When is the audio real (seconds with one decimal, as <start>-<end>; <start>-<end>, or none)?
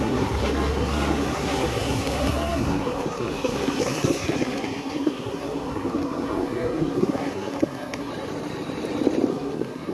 8.1-9.3